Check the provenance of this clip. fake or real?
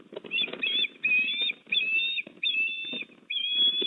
real